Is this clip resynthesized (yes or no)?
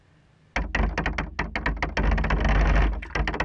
no